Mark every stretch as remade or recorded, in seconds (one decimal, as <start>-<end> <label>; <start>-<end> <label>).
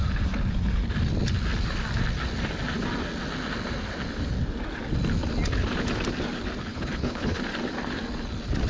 0.0-6.7 recorded; 6.7-7.4 remade; 7.4-8.7 recorded